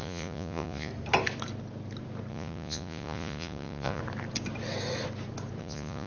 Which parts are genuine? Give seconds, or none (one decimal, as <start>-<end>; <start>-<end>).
0.9-2.3; 4.0-5.6